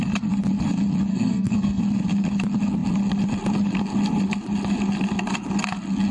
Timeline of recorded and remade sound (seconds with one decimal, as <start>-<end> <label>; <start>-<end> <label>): 0.0-1.1 recorded; 1.1-1.8 remade; 1.8-6.1 recorded